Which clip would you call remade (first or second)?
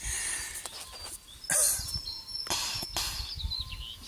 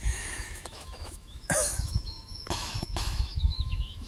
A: second